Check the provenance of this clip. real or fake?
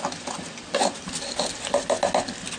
real